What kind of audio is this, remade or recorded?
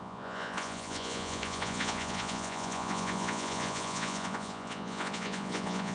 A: remade